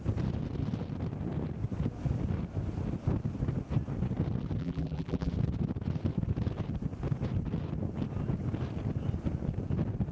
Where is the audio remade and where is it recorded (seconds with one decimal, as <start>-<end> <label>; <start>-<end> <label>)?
0.0-4.6 recorded; 4.6-5.3 remade; 5.3-10.1 recorded